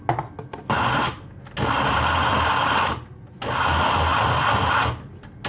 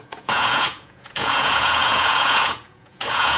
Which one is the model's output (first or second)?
second